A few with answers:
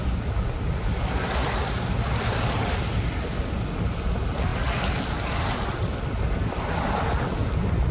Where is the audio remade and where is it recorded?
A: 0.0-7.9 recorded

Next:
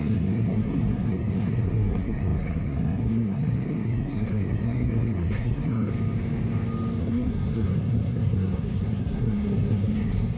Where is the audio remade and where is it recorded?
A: 0.0-5.9 remade; 5.9-7.0 recorded; 7.0-10.4 remade

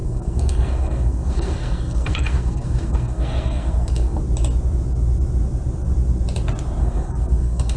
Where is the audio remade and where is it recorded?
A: 0.0-4.2 remade; 4.2-6.8 recorded; 6.8-7.8 remade

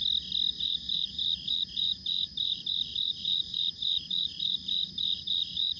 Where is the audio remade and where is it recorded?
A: 0.0-0.6 recorded; 0.6-5.8 remade